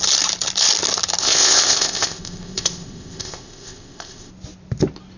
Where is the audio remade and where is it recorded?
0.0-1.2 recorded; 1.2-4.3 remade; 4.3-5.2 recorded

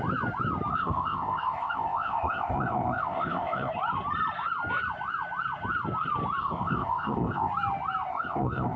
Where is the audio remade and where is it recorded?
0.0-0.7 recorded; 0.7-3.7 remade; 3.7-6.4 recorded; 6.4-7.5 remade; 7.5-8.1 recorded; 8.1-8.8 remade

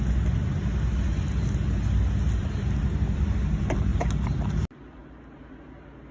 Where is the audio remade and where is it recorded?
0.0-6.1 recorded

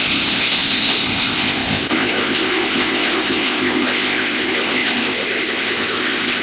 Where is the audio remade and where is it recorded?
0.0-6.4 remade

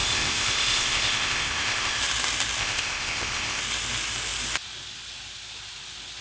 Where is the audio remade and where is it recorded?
0.0-2.0 remade; 2.0-2.6 recorded; 2.6-3.6 remade; 3.6-6.2 recorded

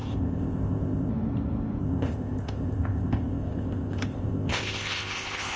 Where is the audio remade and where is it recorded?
0.0-1.1 remade; 1.1-1.8 recorded; 1.8-5.6 remade

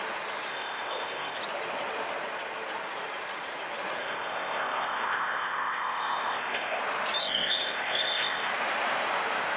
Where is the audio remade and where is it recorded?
0.0-0.5 recorded; 0.5-1.4 remade; 1.4-4.0 recorded; 4.0-6.8 remade; 6.8-7.2 recorded; 7.2-8.5 remade; 8.5-9.6 recorded

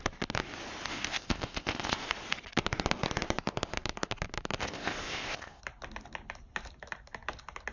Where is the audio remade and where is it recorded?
0.0-0.9 recorded; 0.9-2.1 remade; 2.1-4.6 recorded; 4.6-5.6 remade; 5.6-7.7 recorded